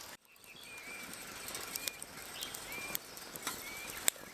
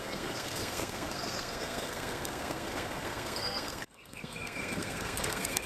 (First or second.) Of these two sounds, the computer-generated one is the second